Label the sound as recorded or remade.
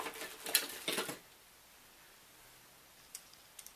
recorded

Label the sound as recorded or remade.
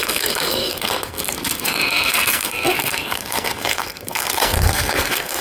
remade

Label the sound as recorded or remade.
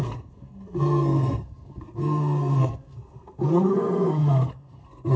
remade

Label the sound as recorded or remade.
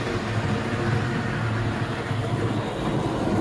recorded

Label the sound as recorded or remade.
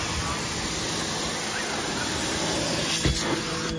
recorded